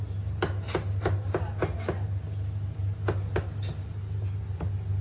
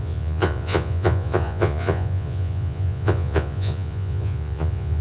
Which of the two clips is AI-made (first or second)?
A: second